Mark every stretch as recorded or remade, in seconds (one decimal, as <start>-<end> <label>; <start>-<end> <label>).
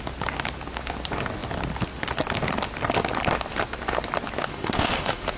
0.0-4.5 recorded; 4.5-5.4 remade